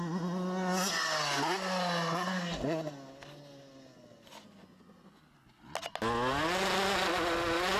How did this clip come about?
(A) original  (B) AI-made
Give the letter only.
A